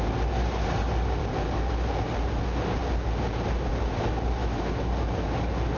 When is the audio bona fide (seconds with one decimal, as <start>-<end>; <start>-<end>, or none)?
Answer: 0.0-4.4; 4.9-5.8

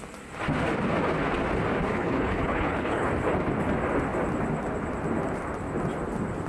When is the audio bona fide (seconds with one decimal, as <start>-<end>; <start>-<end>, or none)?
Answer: 0.0-1.9; 3.1-6.5

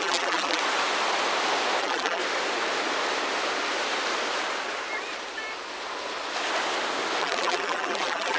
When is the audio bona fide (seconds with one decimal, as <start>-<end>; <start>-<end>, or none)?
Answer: 0.6-1.8; 2.2-7.2

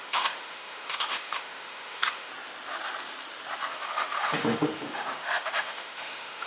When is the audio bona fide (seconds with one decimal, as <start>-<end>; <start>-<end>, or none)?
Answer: 2.3-3.7

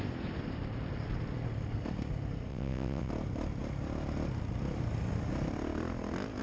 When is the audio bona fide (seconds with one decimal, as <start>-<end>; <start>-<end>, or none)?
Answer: 0.0-2.5; 3.1-6.4

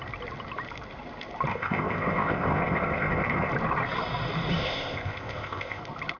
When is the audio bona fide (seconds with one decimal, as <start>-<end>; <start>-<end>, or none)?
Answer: 0.0-1.5; 3.5-4.5; 5.8-6.2

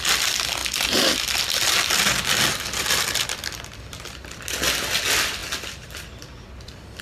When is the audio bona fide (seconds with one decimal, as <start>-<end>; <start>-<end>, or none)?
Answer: 0.0-7.0

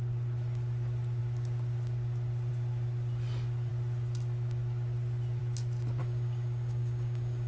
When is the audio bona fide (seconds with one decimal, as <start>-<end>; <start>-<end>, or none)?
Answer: 0.0-6.0